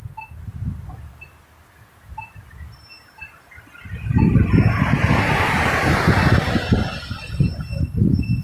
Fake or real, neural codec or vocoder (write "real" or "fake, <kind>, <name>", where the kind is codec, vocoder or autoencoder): real